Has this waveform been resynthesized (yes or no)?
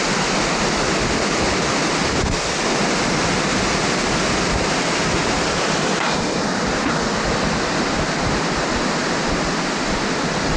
no